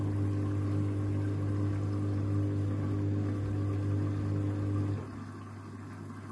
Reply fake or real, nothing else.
real